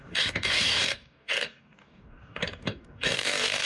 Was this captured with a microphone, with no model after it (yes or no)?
no